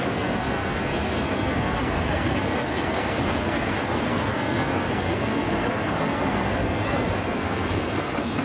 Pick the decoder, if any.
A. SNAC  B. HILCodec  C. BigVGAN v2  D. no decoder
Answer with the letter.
A